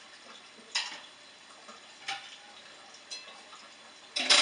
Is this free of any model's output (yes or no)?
yes